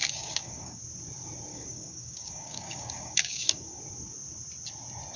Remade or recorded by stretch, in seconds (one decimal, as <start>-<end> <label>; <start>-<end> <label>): 0.0-0.8 remade; 0.8-1.5 recorded; 1.5-3.8 remade; 3.8-5.2 recorded